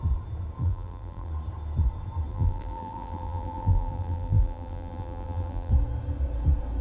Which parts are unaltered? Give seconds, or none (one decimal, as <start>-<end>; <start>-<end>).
0.0-0.6; 1.3-2.3; 5.7-6.8